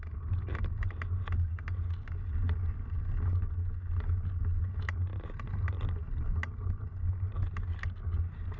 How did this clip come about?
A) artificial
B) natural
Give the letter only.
B